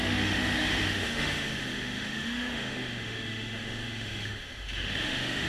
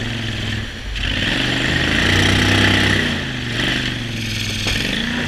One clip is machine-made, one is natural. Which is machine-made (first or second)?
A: first